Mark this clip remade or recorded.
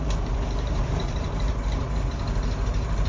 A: remade